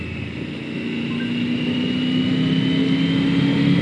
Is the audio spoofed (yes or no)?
no